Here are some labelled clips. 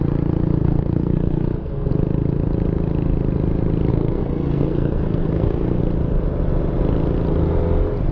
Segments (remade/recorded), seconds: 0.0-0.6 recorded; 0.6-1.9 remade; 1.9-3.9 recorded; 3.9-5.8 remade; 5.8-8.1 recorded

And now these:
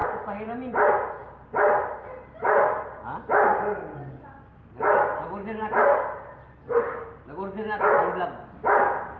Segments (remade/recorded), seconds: 0.0-9.2 recorded

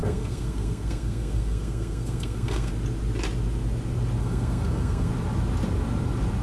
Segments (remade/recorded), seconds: 0.0-2.7 remade; 2.7-4.2 recorded; 4.2-5.1 remade; 5.1-6.4 recorded

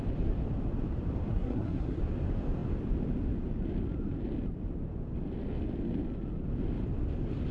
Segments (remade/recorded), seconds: 0.0-1.3 recorded; 1.3-2.0 remade; 2.0-7.5 recorded

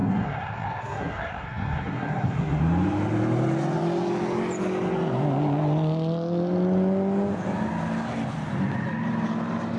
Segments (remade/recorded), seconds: 0.0-2.6 remade; 2.6-9.8 recorded